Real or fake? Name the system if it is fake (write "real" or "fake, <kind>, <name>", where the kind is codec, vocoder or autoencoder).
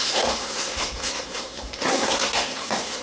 fake, codec, SNAC